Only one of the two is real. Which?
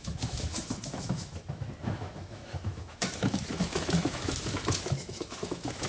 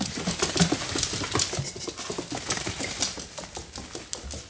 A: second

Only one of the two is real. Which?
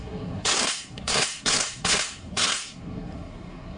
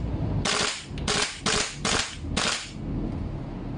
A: second